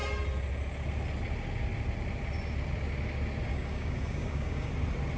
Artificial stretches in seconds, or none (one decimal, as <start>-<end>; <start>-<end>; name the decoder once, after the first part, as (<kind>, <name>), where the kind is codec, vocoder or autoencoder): 3.5-4.7 (codec, DAC)